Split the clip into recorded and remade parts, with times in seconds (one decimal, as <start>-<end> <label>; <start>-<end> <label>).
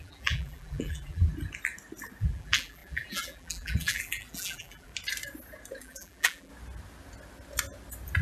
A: 0.0-1.3 remade; 1.3-2.2 recorded; 2.2-4.9 remade; 4.9-5.8 recorded; 5.8-6.5 remade; 6.5-8.2 recorded